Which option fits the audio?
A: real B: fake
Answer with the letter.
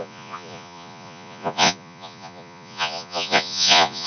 B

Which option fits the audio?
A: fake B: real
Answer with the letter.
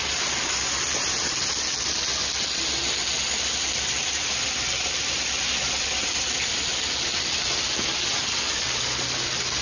B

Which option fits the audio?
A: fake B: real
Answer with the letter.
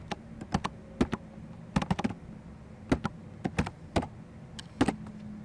B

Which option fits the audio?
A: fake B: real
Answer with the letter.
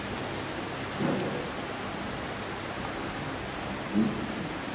B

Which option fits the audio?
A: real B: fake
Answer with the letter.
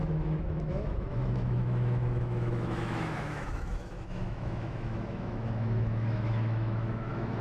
B